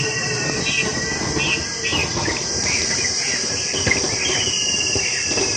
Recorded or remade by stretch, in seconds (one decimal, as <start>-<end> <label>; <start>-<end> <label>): 0.0-0.9 remade; 0.9-1.6 recorded; 1.6-5.6 remade